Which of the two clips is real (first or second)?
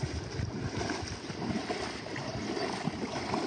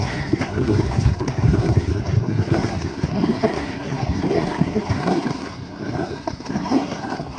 first